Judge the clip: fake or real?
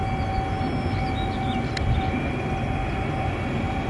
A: real